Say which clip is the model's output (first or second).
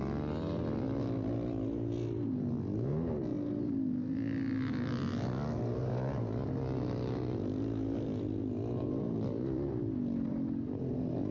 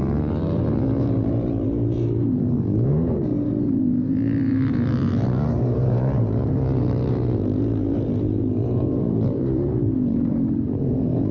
second